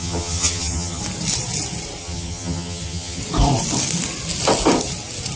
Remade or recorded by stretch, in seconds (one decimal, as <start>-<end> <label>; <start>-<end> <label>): 0.0-1.0 remade; 1.0-2.0 recorded; 2.0-3.2 remade; 3.2-5.4 recorded